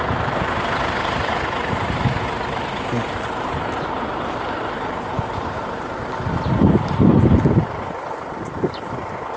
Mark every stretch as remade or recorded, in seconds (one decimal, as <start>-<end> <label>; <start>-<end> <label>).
0.0-7.1 remade; 7.1-8.1 recorded; 8.1-9.4 remade